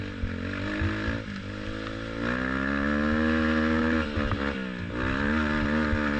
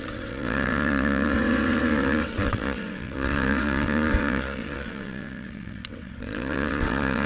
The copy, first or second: second